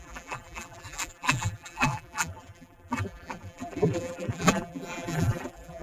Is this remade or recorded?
remade